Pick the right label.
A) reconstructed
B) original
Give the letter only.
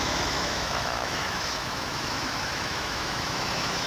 A